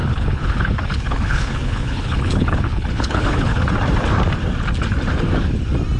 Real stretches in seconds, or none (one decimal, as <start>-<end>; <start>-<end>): 3.6-6.0